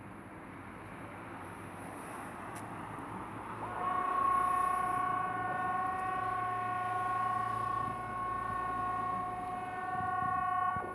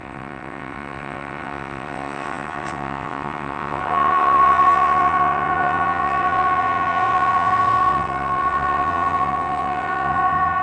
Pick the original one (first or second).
first